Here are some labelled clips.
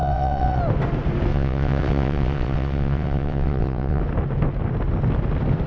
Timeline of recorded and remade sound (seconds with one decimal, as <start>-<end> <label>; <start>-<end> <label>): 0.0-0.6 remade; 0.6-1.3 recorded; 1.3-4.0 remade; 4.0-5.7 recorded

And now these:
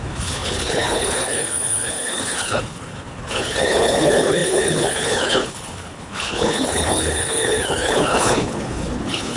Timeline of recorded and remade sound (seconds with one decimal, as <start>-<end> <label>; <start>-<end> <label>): 0.0-9.4 remade

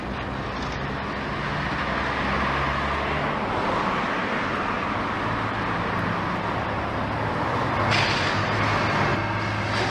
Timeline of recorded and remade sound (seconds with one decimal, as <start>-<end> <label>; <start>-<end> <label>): 0.0-9.9 recorded

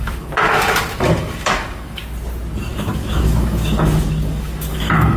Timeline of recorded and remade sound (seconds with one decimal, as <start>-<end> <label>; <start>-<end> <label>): 0.0-2.0 remade; 2.0-2.7 recorded; 2.7-5.2 remade